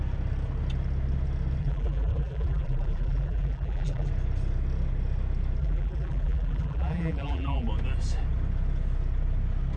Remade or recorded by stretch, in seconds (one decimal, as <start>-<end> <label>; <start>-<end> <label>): 0.0-1.6 recorded; 1.6-4.1 remade; 4.1-5.6 recorded; 5.6-7.7 remade; 7.7-9.8 recorded